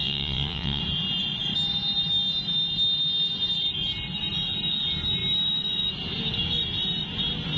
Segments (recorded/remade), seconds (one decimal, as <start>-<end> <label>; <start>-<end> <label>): 0.0-0.8 remade; 0.8-7.6 recorded